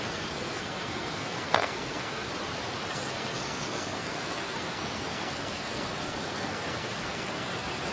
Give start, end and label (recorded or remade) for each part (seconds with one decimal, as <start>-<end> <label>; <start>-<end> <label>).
0.0-2.3 remade; 2.3-2.9 recorded; 2.9-7.9 remade